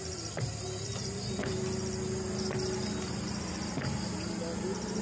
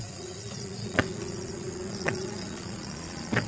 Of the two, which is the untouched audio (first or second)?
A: first